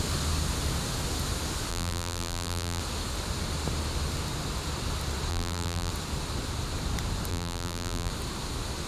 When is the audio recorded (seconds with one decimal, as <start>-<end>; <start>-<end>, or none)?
0.0-1.7; 2.8-5.3; 5.9-7.3; 8.1-8.9